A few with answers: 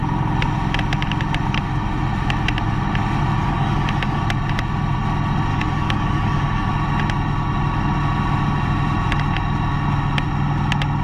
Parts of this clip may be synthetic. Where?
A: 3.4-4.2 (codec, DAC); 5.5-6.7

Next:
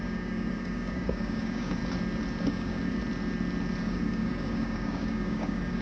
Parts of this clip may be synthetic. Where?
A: 0.0-1.8 (codec, DAC); 2.4-3.0; 3.8-5.8

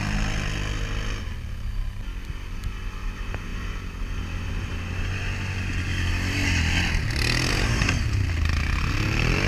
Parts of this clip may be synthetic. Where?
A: none

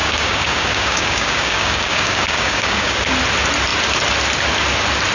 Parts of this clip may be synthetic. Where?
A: 0.0-3.1 (codec, DAC)

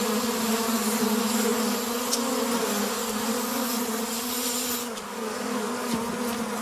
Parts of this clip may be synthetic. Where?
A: 4.8-5.9 (codec, DAC)

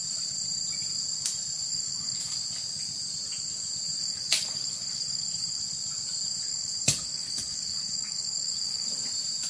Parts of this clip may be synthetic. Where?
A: 1.7-2.3 (codec, DAC); 4.0-5.6; 6.5-8.9

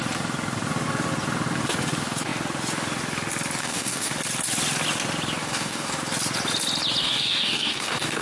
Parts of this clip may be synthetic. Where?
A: 3.6-4.1 (codec, DAC); 5.4-6.0; 7.0-8.2